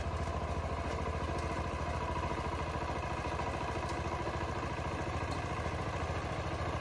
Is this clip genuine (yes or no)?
yes